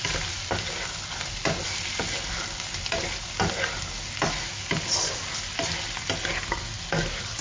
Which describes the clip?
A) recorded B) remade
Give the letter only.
A